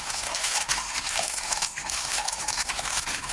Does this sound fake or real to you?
fake